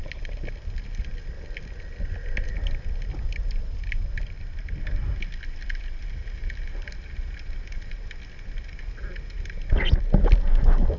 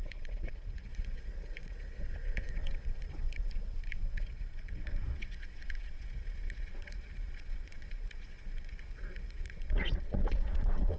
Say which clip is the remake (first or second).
second